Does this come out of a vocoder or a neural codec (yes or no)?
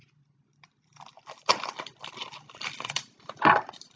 no